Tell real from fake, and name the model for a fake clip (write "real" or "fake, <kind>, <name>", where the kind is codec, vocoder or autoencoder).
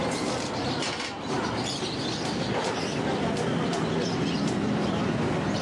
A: fake, vocoder, BigVGAN v2